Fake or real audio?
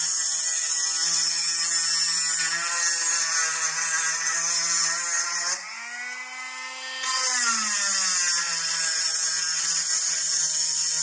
real